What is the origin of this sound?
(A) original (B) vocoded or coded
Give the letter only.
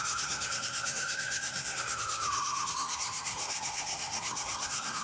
B